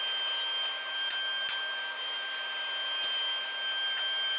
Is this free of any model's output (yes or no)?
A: yes